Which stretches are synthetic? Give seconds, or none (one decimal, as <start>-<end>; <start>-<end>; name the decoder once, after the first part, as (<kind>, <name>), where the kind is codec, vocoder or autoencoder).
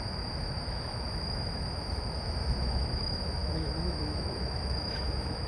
0.0-5.5 (autoencoder, DAC-VAE)